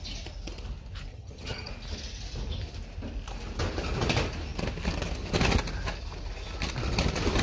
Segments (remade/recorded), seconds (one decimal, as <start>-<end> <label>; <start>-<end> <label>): 0.0-1.1 recorded; 1.1-1.7 remade; 1.7-7.4 recorded